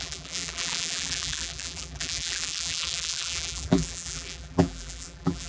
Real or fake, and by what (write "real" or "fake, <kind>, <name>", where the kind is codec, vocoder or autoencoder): fake, vocoder, BigVGAN v2